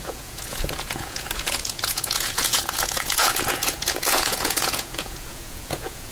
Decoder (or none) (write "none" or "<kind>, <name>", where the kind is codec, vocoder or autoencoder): vocoder, Vocos